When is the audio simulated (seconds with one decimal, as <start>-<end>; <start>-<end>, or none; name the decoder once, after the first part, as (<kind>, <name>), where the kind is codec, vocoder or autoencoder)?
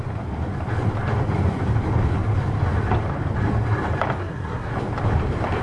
4.2-4.7 (codec, SNAC)